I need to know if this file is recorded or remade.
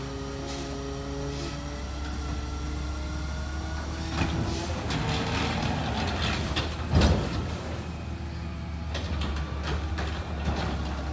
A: recorded